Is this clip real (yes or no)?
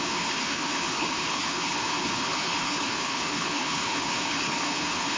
no